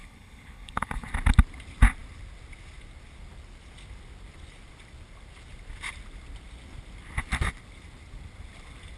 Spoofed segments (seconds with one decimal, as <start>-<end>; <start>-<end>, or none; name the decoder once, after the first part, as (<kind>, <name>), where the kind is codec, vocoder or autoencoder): 0.0-1.1 (codec, HILCodec)